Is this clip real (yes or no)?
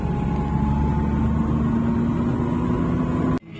yes